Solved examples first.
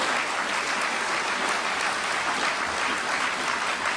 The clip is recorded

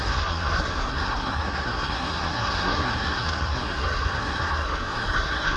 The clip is remade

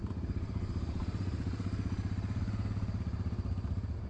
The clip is recorded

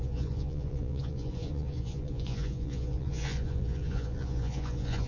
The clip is remade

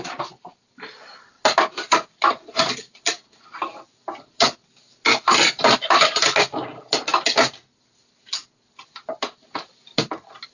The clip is recorded